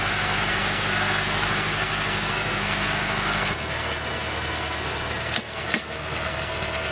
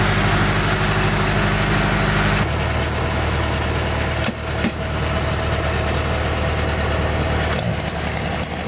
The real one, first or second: second